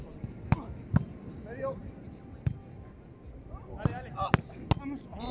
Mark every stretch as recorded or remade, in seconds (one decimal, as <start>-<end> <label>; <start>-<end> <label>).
0.0-5.3 recorded